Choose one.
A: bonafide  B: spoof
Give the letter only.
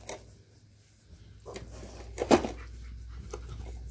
A